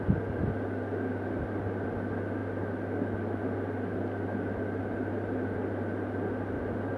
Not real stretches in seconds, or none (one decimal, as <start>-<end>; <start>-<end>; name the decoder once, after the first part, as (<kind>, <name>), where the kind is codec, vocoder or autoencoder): none